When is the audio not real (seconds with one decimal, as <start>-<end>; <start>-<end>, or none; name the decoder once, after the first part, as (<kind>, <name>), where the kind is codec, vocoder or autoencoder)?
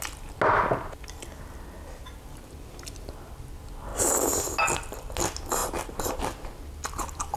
5.6-6.2 (vocoder, BigVGAN v2)